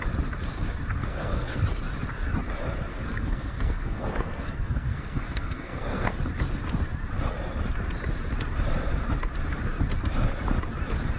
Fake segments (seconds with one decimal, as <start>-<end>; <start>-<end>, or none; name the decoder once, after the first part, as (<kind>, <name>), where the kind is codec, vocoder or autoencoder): 1.0-1.6 (codec, SNAC); 2.9-6.2